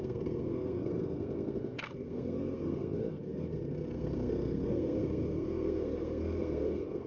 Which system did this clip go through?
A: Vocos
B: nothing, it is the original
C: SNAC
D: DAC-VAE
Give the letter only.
C